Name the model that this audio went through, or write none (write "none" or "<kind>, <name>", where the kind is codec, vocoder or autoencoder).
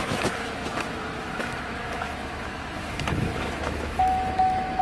autoencoder, DAC-VAE